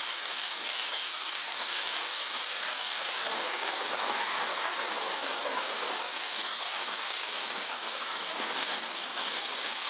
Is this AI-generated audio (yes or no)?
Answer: yes